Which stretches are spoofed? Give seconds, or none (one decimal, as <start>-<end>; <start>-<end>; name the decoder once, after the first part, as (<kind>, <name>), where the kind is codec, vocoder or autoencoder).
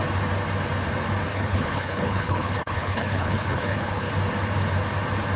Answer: 1.3-4.1 (codec, HILCodec)